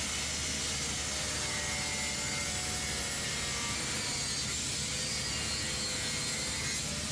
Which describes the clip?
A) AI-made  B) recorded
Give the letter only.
B